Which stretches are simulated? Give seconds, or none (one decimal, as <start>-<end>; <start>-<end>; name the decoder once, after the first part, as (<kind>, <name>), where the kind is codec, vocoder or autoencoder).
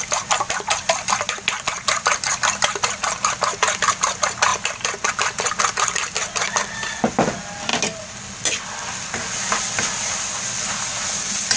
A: none